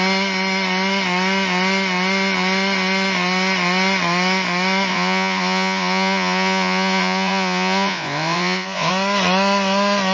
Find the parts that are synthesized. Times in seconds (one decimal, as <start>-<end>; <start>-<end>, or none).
4.9-8.9